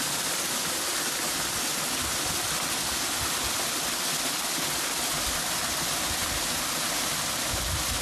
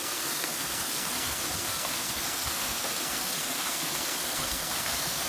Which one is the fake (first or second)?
second